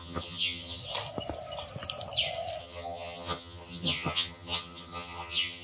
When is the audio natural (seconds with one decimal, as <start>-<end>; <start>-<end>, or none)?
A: 0.8-2.6